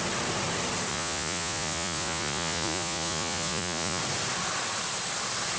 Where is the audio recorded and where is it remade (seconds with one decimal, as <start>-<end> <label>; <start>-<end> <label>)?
0.0-0.9 recorded; 0.9-4.0 remade; 4.0-5.6 recorded